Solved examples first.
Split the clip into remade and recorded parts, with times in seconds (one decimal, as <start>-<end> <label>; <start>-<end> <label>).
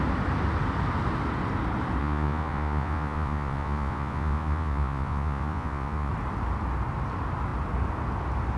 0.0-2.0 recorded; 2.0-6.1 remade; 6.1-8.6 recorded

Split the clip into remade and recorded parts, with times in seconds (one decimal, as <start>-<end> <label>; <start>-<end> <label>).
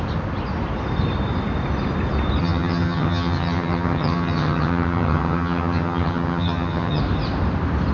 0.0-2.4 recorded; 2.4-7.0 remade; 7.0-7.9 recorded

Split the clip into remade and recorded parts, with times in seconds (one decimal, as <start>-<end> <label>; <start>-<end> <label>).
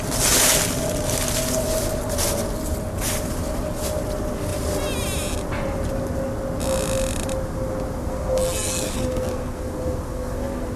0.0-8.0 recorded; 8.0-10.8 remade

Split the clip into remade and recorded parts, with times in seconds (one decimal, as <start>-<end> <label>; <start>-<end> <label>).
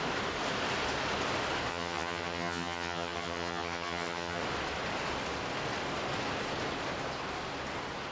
0.0-1.7 recorded; 1.7-4.4 remade; 4.4-8.1 recorded